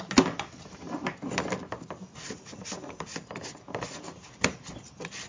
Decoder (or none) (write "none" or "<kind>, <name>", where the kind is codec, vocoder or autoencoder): none